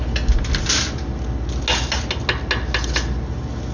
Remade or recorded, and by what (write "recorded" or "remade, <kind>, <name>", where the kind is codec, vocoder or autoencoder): recorded